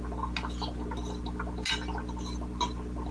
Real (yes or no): yes